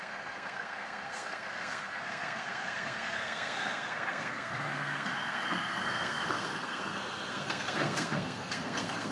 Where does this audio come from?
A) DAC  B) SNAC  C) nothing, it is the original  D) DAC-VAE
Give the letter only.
B